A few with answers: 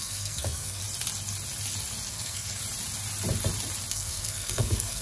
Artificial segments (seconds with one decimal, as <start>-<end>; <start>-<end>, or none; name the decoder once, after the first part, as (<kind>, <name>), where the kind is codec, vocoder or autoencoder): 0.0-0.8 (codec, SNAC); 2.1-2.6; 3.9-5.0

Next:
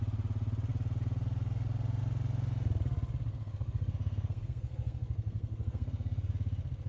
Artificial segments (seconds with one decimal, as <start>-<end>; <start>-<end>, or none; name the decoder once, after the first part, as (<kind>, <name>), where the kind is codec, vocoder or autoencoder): 3.3-6.3 (codec, SNAC)

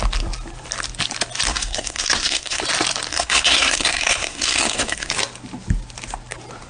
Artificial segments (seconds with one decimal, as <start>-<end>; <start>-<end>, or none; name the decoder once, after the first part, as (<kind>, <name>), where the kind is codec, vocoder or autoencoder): 1.5-2.6 (codec, SNAC); 3.1-5.1

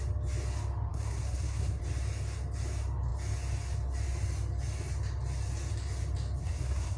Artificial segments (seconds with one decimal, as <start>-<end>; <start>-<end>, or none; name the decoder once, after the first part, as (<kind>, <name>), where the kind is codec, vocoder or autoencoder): 0.9-1.8 (codec, SNAC); 6.4-7.0